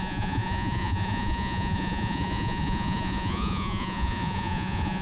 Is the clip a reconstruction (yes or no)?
yes